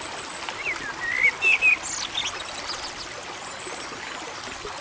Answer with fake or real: real